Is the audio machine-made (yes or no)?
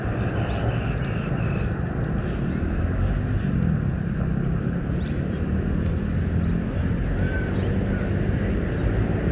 no